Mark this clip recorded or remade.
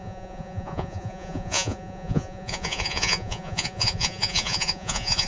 remade